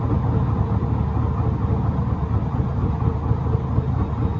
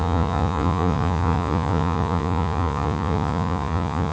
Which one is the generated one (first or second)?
second